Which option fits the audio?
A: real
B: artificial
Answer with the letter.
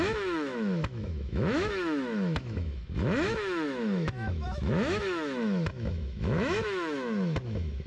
B